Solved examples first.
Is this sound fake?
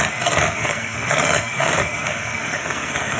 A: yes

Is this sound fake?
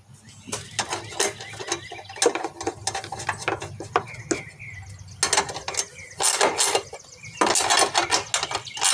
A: no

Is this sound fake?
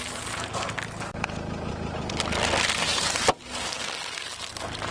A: no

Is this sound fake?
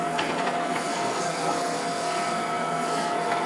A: yes